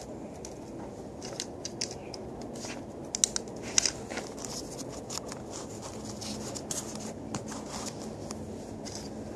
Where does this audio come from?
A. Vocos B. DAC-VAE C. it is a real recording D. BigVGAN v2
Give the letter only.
C